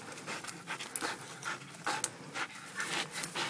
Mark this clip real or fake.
real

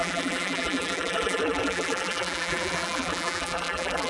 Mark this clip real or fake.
fake